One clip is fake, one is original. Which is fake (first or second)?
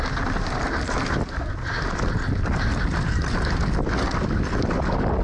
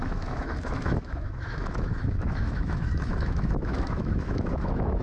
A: second